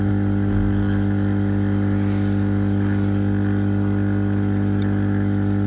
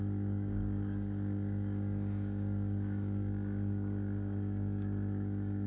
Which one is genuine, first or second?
first